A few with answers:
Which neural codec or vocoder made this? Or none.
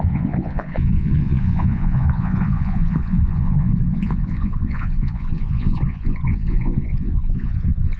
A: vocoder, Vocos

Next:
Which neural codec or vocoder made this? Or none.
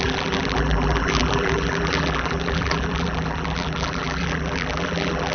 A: vocoder, BigVGAN v2